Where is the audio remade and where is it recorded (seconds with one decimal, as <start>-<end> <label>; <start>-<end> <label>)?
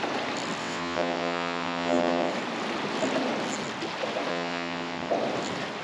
0.0-0.6 recorded; 0.6-2.3 remade; 2.3-4.3 recorded; 4.3-5.1 remade; 5.1-5.8 recorded